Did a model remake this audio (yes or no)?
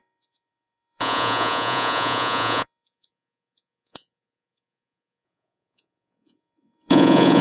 yes